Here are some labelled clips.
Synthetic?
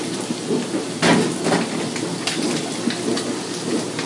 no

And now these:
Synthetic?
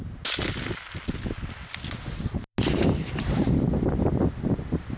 no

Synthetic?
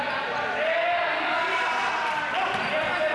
no